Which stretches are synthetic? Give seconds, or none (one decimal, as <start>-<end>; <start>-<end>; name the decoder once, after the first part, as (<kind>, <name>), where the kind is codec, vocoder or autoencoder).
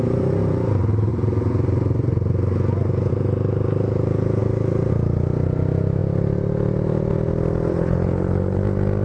7.7-8.6 (codec, HILCodec)